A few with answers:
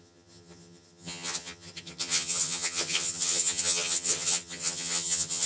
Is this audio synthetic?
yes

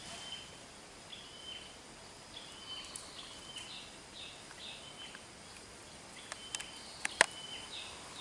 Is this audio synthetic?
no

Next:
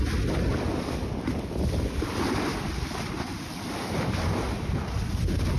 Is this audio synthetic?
no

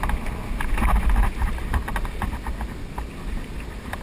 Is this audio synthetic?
no